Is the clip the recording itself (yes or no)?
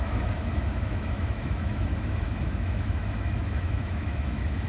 no